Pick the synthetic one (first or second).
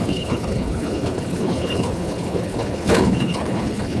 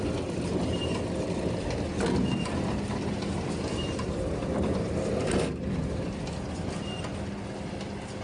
first